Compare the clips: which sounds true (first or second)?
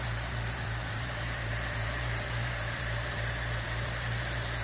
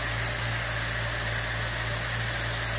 second